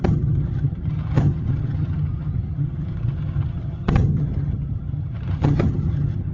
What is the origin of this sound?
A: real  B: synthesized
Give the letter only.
B